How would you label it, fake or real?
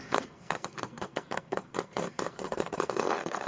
fake